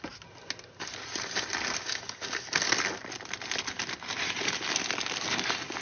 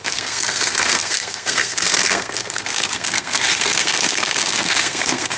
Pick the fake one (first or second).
second